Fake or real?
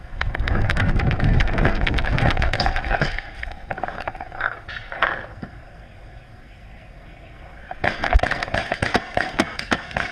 fake